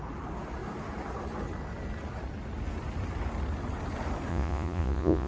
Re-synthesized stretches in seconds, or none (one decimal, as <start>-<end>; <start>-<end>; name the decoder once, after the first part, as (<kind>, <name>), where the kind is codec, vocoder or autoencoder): 4.3-5.3 (vocoder, Vocos)